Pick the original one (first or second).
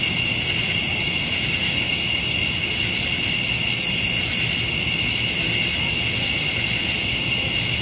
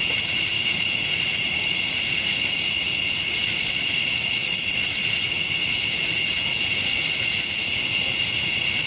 first